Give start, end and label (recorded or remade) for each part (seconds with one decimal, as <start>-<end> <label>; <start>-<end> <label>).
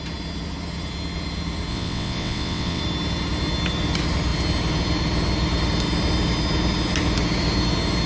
0.0-1.7 recorded; 1.7-2.8 remade; 2.8-8.1 recorded